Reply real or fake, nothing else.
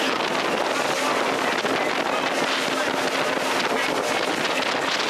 real